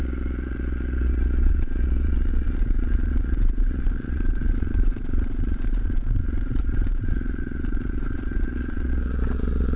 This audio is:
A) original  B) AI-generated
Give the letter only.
B